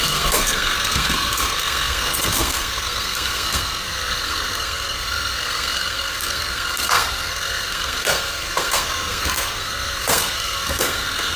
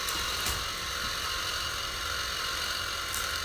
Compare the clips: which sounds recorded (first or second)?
second